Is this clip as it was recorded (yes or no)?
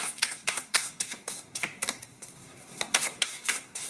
no